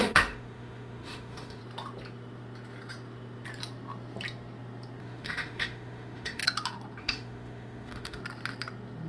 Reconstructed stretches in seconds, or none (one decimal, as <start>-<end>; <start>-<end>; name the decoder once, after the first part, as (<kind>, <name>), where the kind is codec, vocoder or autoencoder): 0.0-1.6 (autoencoder, DAC-VAE); 5.0-6.4; 7.0-8.2